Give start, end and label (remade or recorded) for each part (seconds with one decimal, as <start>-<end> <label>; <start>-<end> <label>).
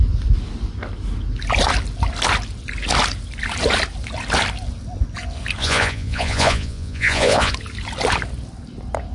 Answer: 0.0-5.6 recorded; 5.6-7.5 remade; 7.5-9.1 recorded